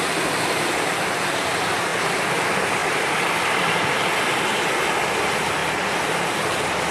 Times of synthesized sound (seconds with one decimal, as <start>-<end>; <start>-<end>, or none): 2.8-4.1; 5.6-6.1